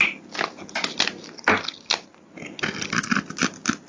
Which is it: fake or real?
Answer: real